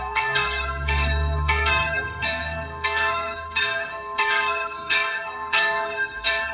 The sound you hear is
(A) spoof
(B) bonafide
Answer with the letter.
A